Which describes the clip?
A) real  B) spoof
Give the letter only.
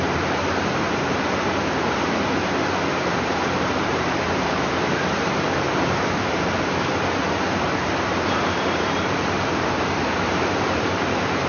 B